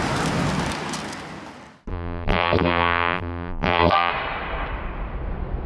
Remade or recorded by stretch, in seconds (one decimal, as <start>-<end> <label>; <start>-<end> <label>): 0.0-1.9 recorded; 1.9-4.1 remade; 4.1-5.7 recorded